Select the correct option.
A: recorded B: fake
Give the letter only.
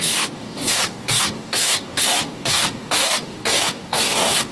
B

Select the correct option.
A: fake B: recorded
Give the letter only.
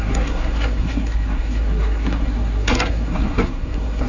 A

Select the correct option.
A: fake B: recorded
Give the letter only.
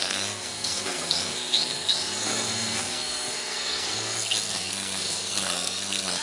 A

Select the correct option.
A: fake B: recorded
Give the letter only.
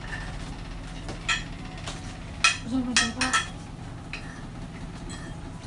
B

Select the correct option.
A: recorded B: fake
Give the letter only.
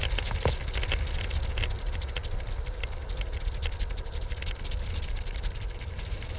A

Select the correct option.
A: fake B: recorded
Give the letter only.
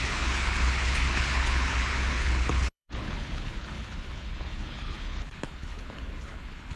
A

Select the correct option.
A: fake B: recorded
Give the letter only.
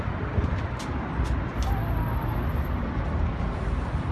B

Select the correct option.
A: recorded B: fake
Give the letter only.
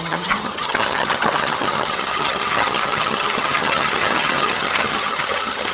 B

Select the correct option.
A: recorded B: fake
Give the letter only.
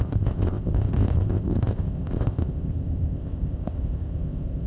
B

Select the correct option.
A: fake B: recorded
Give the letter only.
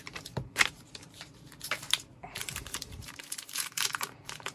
A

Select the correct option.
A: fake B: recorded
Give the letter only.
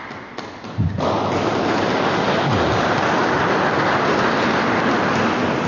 B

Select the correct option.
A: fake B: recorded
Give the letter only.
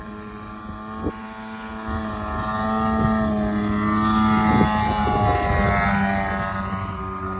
B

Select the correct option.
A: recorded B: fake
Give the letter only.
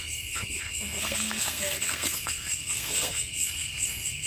B